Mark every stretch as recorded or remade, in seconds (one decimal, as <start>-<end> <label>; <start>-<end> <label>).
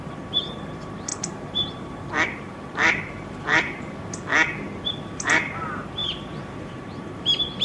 0.0-4.3 remade; 4.3-5.0 recorded; 5.0-6.0 remade; 6.0-6.5 recorded; 6.5-7.6 remade